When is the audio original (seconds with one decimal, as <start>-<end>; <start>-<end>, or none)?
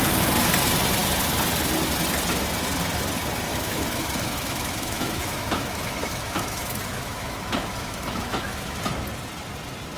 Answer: 0.0-3.5; 8.8-10.0